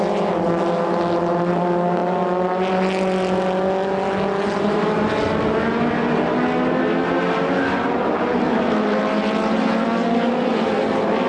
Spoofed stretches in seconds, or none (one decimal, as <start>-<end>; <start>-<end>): none